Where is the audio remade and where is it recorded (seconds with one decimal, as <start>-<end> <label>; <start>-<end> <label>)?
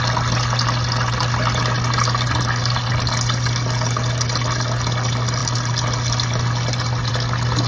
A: 0.0-7.7 recorded